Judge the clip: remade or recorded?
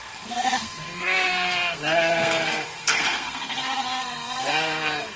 remade